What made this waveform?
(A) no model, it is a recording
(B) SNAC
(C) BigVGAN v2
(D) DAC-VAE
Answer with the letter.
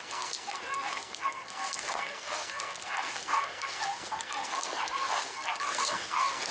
B